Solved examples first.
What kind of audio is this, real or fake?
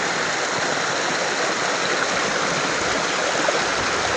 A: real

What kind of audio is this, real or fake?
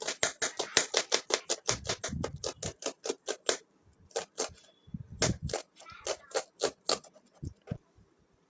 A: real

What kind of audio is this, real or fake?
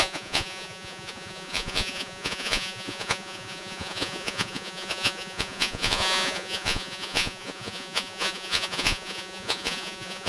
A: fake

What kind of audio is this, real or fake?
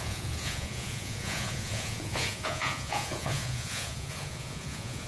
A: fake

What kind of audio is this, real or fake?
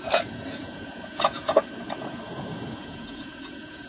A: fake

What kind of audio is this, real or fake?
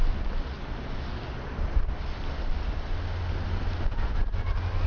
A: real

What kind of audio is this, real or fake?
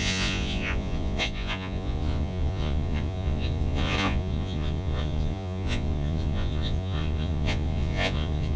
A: fake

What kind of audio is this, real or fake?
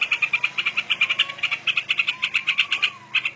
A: real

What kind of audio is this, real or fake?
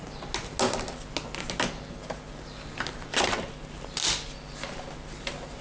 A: real